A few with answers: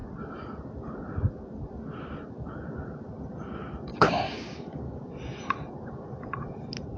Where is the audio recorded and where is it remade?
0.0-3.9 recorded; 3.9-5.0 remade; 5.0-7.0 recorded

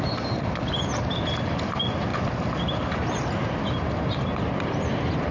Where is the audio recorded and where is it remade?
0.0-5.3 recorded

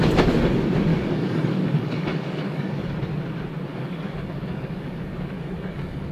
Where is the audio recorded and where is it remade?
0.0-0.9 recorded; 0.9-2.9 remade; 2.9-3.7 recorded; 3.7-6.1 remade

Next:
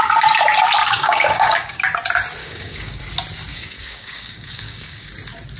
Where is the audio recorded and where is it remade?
0.0-0.8 recorded; 0.8-1.8 remade; 1.8-2.4 recorded; 2.4-3.0 remade; 3.0-3.5 recorded; 3.5-5.1 remade; 5.1-5.6 recorded

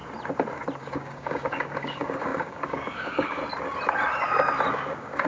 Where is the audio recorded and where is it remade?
0.0-0.8 recorded; 0.8-3.4 remade; 3.4-4.7 recorded; 4.7-5.3 remade

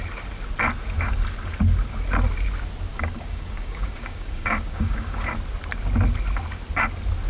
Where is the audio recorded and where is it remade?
0.0-2.9 recorded; 2.9-5.3 remade; 5.3-7.3 recorded

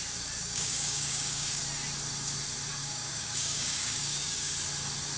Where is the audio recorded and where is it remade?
0.0-0.4 recorded; 0.4-1.6 remade; 1.6-2.8 recorded; 2.8-4.5 remade; 4.5-5.2 recorded